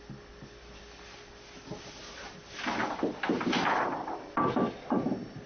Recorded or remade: recorded